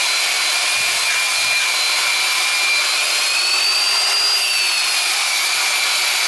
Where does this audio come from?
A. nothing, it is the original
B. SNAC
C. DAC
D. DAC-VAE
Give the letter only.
A